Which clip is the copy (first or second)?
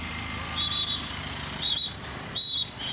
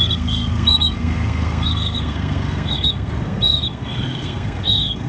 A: second